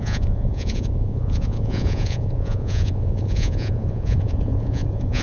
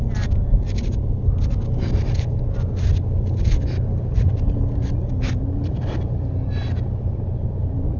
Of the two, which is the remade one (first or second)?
first